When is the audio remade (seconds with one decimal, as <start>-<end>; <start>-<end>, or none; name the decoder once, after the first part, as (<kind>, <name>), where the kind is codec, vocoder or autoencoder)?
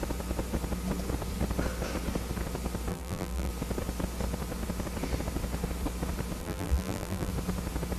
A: 2.9-3.5 (vocoder, BigVGAN v2); 6.4-7.3